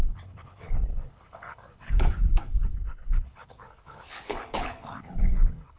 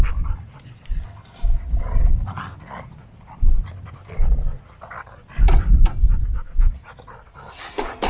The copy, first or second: first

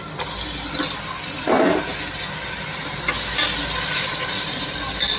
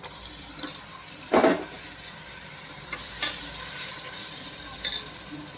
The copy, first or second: second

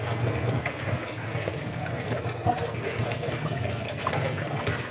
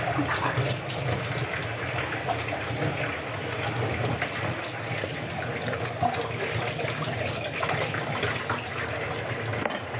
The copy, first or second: first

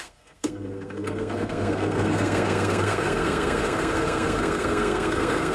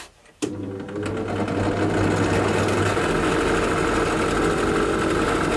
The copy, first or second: first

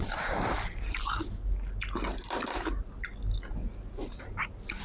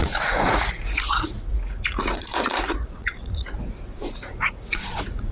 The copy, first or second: second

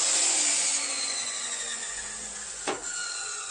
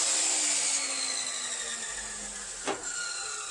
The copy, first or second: first